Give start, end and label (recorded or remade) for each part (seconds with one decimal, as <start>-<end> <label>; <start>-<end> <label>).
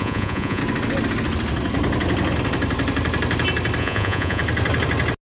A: 0.0-0.6 remade; 0.6-3.8 recorded; 3.8-4.4 remade; 4.4-5.4 recorded